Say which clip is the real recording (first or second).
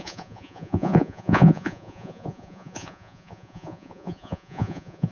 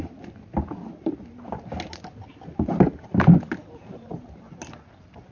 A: second